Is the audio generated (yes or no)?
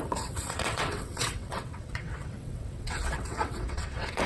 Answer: yes